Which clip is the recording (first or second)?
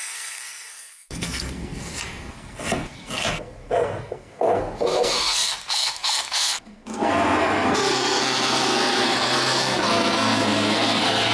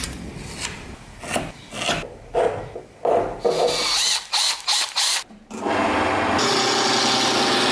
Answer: second